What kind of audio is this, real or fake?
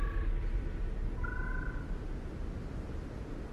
real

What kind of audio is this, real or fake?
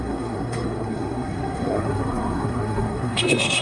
fake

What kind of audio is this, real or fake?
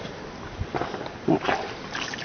real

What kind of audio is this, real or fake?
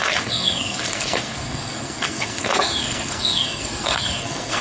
fake